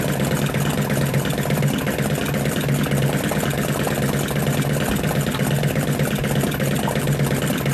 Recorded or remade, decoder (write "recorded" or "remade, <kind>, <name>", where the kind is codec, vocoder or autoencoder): recorded